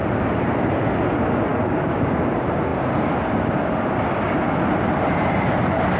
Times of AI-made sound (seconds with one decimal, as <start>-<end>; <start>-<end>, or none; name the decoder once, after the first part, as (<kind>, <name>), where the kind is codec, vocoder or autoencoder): 1.5-2.2 (codec, DAC)